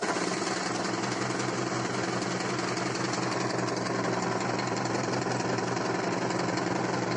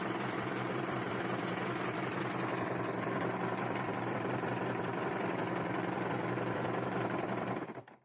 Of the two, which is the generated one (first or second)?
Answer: second